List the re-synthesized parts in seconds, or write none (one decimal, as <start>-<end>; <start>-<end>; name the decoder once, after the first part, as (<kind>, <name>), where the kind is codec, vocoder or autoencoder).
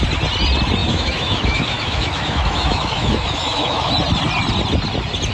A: 0.8-3.9 (autoencoder, DAC-VAE)